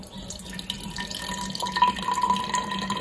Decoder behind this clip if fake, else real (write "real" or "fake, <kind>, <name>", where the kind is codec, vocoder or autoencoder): real